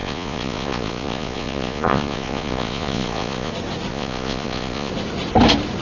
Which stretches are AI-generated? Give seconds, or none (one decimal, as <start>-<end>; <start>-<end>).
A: 0.0-3.5; 3.9-4.9